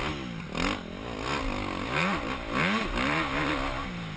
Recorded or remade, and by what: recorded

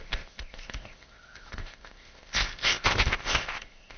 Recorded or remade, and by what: remade, codec, ZipCodec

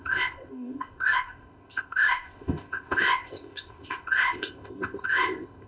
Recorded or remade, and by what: remade, codec, ZipCodec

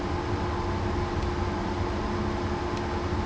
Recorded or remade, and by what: recorded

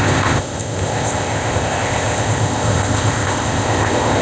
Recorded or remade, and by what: remade, codec, ZipCodec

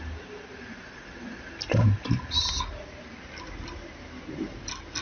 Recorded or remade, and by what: recorded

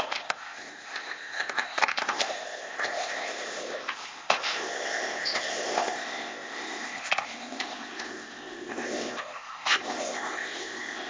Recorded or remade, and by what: remade, codec, ZipCodec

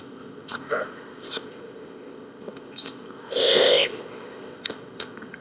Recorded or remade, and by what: remade, codec, ZipCodec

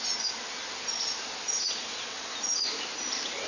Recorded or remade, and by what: recorded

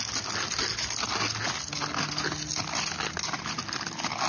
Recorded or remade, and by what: recorded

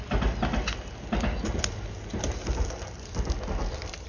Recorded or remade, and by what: recorded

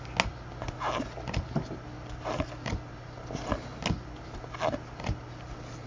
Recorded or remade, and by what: recorded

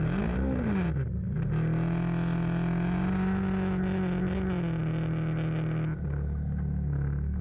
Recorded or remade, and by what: recorded